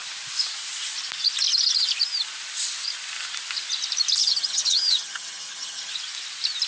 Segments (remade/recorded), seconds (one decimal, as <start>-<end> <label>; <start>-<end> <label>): 0.0-4.2 recorded; 4.2-5.9 remade; 5.9-6.7 recorded